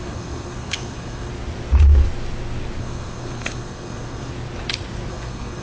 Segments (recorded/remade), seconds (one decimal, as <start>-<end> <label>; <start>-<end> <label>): 0.0-1.3 remade; 1.3-2.8 recorded; 2.8-4.3 remade; 4.3-5.1 recorded; 5.1-5.6 remade